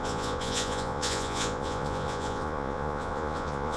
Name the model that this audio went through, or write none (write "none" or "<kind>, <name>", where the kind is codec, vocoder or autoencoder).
vocoder, Vocos